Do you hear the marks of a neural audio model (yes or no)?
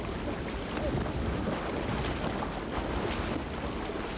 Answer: no